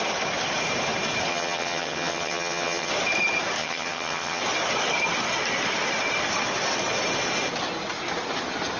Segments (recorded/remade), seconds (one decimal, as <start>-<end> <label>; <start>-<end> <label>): 0.0-1.3 recorded; 1.3-2.9 remade; 2.9-3.6 recorded; 3.6-4.4 remade; 4.4-8.8 recorded